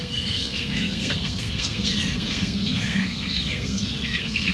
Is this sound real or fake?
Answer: fake